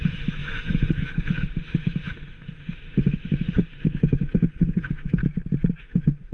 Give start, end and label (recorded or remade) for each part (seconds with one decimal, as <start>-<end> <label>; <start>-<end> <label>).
0.0-5.2 remade; 5.2-5.8 recorded; 5.8-6.3 remade